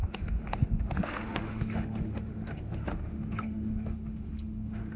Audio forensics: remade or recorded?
remade